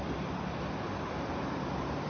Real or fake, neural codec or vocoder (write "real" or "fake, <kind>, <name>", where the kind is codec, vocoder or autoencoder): real